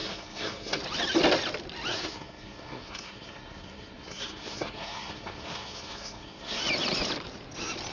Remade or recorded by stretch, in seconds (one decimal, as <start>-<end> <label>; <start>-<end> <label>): 0.0-0.8 remade; 0.8-1.9 recorded; 1.9-6.6 remade; 6.6-7.9 recorded